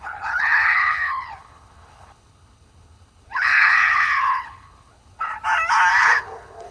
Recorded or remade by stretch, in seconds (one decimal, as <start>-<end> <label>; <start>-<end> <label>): 0.0-5.3 remade; 5.3-6.0 recorded; 6.0-6.7 remade